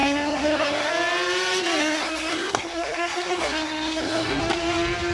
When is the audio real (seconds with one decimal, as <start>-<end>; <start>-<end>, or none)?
0.9-1.8; 4.4-5.1